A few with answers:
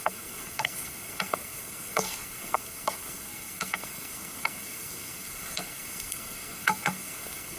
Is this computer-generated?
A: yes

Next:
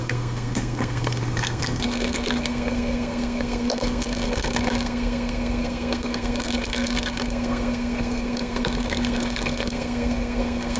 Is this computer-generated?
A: yes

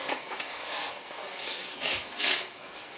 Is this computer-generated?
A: yes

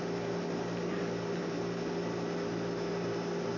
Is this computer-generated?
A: no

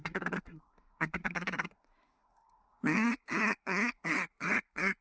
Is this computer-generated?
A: yes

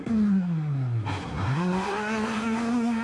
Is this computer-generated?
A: yes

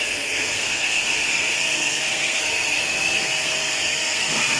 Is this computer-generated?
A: yes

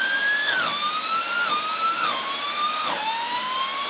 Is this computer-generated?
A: no